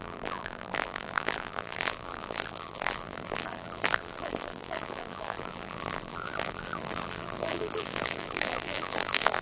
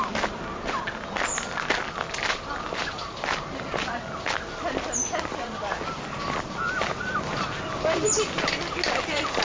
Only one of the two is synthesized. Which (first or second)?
first